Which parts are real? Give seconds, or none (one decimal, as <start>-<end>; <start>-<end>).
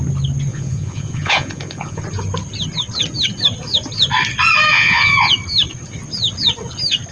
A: 0.0-0.5; 2.0-4.7; 5.3-7.1